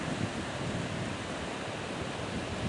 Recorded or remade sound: recorded